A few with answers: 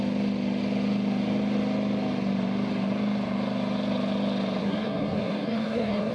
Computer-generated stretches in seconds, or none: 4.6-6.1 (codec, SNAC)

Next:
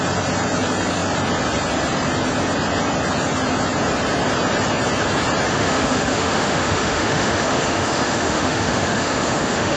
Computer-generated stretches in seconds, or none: 5.5-9.8 (autoencoder, DAC-VAE)

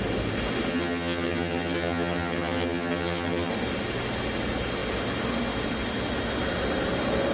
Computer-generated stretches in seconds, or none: 0.7-3.5 (vocoder, HiFi-GAN)